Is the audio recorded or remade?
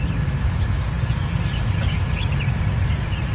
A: recorded